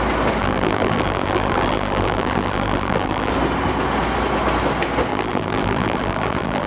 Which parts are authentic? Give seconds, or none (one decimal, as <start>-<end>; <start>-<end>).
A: 0.0-0.4; 3.3-5.1